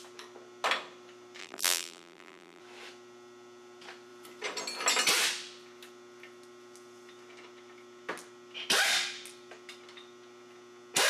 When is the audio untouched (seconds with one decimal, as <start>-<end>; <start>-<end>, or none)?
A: 0.0-1.4; 2.6-11.1